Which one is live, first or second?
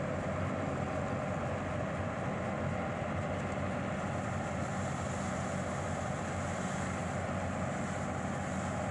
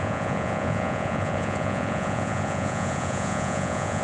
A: first